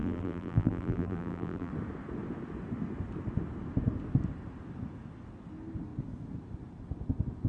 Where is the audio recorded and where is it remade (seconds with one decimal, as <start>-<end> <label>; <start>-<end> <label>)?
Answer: 0.0-1.7 remade; 1.7-7.5 recorded